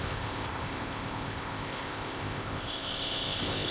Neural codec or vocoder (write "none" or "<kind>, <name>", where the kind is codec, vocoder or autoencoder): codec, ZipCodec